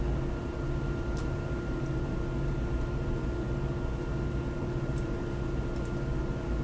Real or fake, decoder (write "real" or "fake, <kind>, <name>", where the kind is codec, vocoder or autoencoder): real